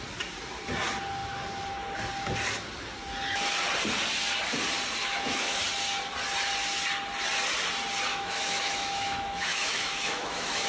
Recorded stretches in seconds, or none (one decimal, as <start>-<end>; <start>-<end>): 0.0-5.0; 5.6-8.1